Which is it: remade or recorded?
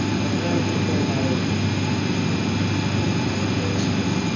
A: recorded